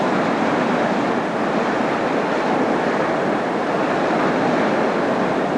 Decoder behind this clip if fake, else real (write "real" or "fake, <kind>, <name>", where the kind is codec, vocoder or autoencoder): real